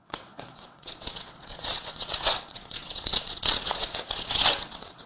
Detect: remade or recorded remade